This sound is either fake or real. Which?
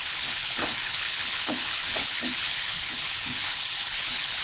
fake